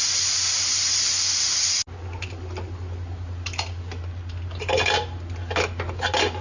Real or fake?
real